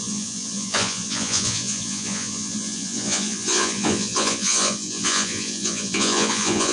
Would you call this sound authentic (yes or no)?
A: no